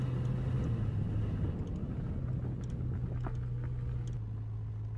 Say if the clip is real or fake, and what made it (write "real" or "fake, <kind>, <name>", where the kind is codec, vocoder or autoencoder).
real